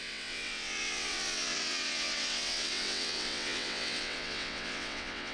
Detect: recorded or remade remade